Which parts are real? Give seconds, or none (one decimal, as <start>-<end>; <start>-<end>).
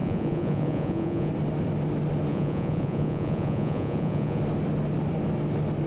1.3-2.3; 4.4-5.9